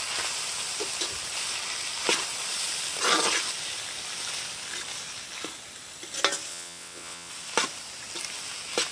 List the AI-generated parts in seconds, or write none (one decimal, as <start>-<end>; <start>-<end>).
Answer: 6.5-7.3